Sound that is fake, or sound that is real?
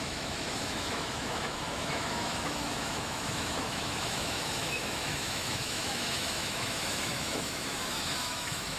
fake